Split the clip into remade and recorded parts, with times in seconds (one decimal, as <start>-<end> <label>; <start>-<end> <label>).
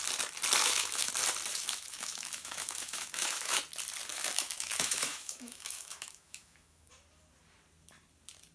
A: 0.0-0.6 recorded; 0.6-1.1 remade; 1.1-1.5 recorded; 1.5-3.6 remade; 3.6-4.1 recorded; 4.1-6.9 remade; 6.9-8.5 recorded